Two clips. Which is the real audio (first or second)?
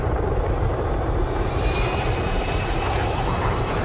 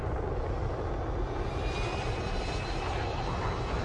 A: second